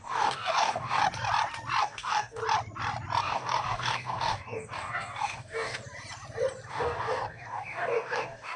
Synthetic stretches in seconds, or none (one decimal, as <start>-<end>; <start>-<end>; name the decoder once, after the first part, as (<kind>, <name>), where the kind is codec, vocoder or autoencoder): 0.0-1.0 (codec, DAC); 1.8-2.4; 3.2-5.8; 6.7-8.6